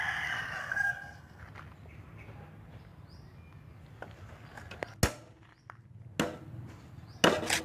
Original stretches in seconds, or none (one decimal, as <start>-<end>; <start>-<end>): 0.0-0.6; 1.4-7.6